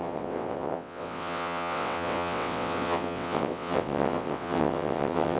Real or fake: fake